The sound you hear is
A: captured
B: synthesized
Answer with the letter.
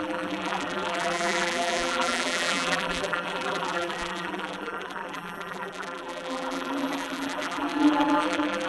B